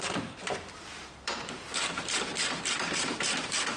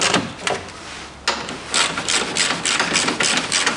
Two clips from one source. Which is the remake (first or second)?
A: first